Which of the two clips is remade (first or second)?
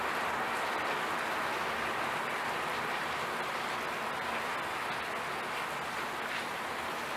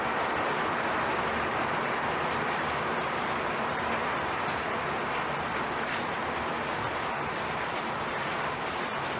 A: second